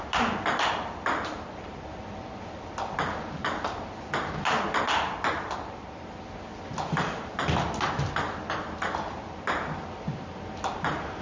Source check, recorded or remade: recorded